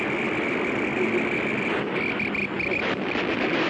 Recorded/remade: recorded